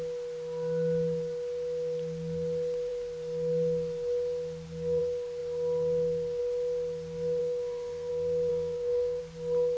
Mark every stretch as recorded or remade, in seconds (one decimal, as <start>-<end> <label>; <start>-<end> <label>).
0.0-7.4 recorded; 7.4-8.1 remade; 8.1-8.5 recorded; 8.5-9.2 remade; 9.2-9.8 recorded